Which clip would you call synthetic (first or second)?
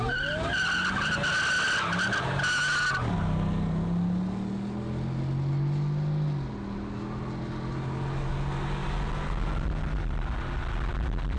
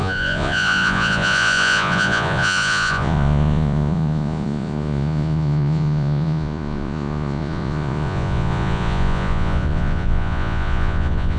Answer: second